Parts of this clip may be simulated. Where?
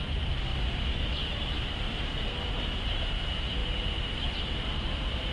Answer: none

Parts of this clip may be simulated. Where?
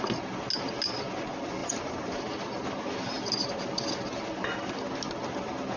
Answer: 1.6-2.2 (vocoder, BigVGAN v2)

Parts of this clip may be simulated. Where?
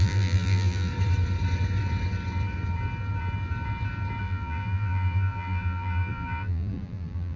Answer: 0.0-0.9 (vocoder, BigVGAN v2); 4.2-7.4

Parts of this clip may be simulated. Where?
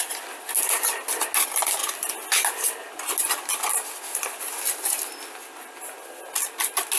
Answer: none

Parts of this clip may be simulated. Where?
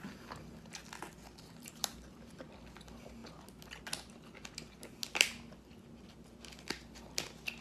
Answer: 1.1-2.6 (vocoder, BigVGAN v2)